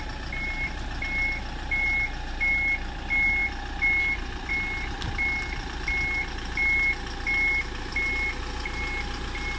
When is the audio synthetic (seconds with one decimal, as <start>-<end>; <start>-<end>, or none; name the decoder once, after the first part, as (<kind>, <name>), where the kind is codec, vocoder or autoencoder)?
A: none